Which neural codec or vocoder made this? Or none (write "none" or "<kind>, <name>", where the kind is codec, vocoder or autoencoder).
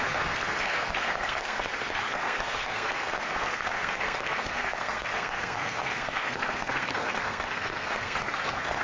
codec, SNAC